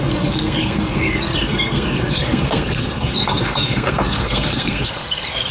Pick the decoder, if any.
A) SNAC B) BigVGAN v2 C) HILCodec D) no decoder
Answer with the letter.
A